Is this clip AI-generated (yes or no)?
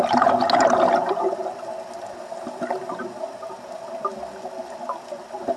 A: no